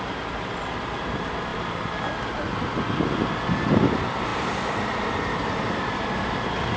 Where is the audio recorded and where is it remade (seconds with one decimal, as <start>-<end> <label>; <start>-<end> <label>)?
0.0-1.5 remade; 1.5-3.7 recorded; 3.7-6.8 remade